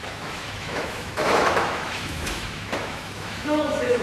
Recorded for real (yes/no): no